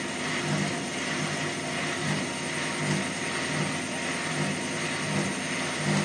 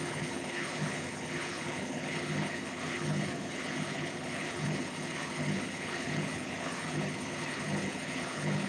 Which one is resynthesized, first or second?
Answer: second